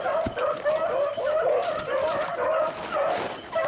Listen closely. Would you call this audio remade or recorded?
recorded